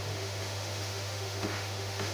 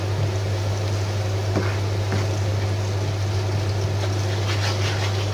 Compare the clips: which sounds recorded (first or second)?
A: second